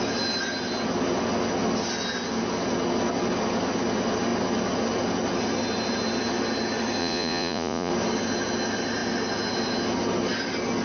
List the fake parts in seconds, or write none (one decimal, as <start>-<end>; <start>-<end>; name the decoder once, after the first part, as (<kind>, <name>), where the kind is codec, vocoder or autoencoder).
7.0-7.9 (vocoder, Vocos)